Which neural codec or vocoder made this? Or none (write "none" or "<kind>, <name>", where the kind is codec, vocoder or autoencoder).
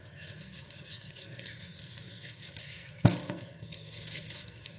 codec, SNAC